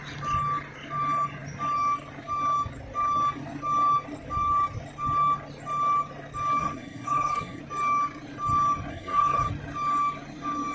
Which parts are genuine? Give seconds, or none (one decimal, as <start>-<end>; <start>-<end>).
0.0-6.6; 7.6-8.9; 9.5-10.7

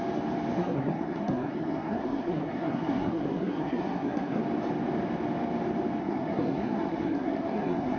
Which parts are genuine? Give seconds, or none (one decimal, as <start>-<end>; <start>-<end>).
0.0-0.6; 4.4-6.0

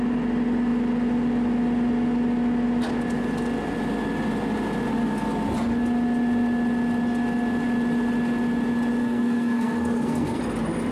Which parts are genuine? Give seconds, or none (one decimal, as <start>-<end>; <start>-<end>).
0.0-9.0; 10.4-10.9

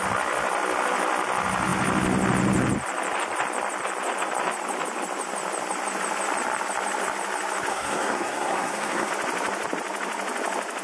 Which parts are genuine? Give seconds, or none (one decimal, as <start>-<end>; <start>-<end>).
0.0-7.7; 9.1-10.8